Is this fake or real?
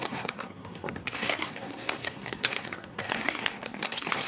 fake